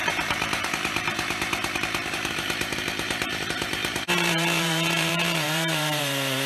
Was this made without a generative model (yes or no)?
no